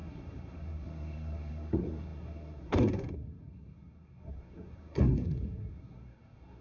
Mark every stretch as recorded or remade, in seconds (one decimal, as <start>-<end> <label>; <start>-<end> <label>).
0.0-6.6 remade